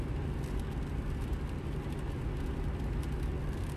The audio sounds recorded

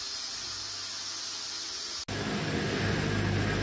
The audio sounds recorded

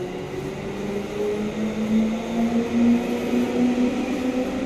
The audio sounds recorded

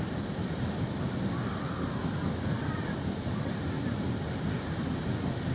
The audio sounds recorded